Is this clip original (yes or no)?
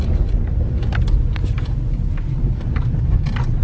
yes